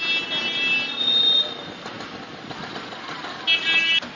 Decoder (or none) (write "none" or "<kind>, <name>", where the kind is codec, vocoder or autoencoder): none